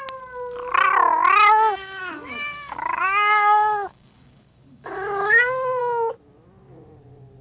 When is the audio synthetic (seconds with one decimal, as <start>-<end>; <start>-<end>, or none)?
2.0-5.8